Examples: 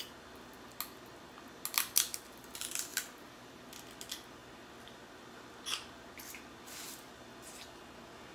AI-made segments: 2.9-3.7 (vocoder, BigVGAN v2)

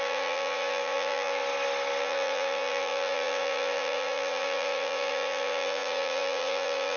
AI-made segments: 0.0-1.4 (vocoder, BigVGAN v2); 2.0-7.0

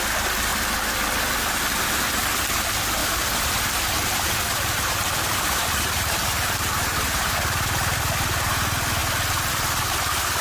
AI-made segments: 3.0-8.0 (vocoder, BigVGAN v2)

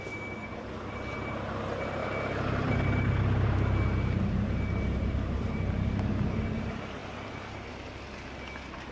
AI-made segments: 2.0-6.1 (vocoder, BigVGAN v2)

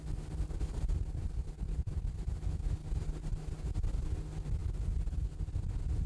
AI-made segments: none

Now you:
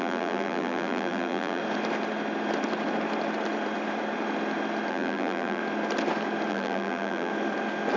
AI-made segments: 0.0-1.6 (vocoder, BigVGAN v2); 4.9-5.6; 6.5-7.3

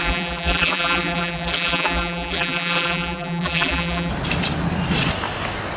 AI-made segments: 0.0-4.1 (vocoder, BigVGAN v2)

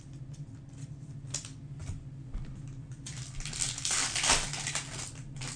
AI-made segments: none